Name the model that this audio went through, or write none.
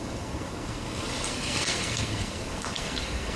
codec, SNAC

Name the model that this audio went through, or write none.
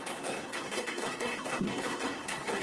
codec, SNAC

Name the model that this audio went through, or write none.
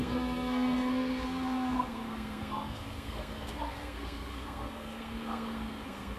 codec, SNAC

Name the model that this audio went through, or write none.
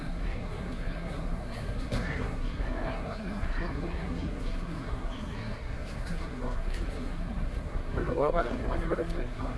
codec, SNAC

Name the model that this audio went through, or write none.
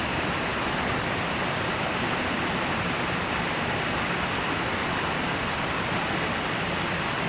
none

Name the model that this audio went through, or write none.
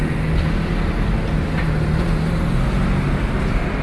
none